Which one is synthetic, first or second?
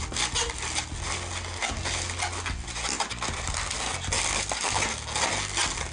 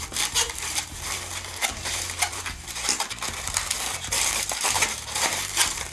second